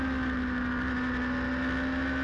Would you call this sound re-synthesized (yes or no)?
no